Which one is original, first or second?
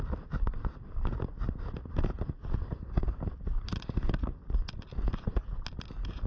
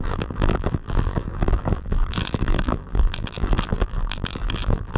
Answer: first